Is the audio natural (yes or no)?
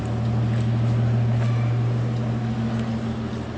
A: yes